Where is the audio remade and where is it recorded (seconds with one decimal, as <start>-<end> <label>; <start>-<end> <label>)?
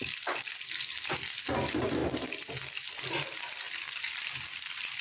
0.0-5.0 recorded